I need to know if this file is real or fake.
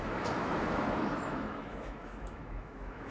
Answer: fake